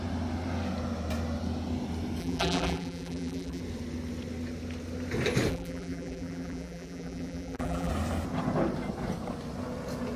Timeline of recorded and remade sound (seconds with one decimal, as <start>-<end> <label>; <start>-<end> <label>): 0.0-2.2 recorded; 2.2-3.6 remade; 3.6-5.5 recorded; 5.5-7.9 remade; 7.9-10.2 recorded